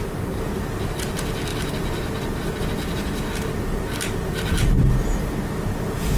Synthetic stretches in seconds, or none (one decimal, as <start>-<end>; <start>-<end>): none